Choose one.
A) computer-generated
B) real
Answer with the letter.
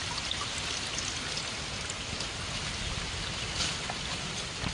B